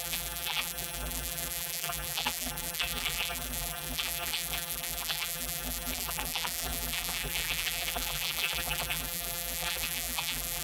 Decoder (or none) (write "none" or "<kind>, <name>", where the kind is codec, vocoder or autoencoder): vocoder, BigVGAN v2